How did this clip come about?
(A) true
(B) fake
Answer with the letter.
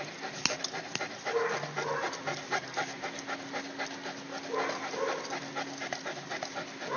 A